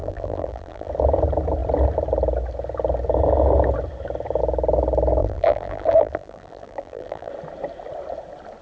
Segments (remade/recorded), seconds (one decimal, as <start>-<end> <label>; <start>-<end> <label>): 0.0-0.9 remade; 0.9-5.2 recorded; 5.2-7.3 remade; 7.3-8.6 recorded